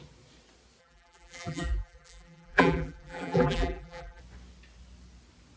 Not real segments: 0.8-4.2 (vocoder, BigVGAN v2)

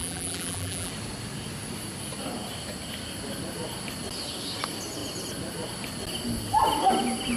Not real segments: 0.0-0.9 (vocoder, BigVGAN v2)

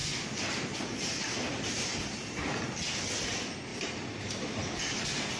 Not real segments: 1.9-2.4 (vocoder, BigVGAN v2); 3.7-5.0

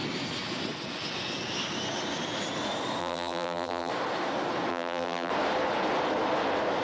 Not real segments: 3.0-3.9 (vocoder, BigVGAN v2); 4.7-5.3

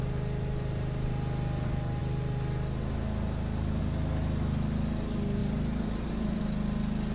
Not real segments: 5.4-6.4 (vocoder, BigVGAN v2)

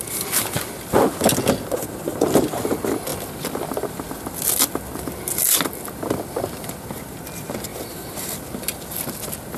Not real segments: 7.7-8.3 (vocoder, BigVGAN v2)

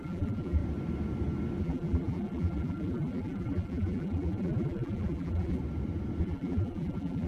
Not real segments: 0.0-0.6 (vocoder, BigVGAN v2); 1.6-5.6; 6.2-7.3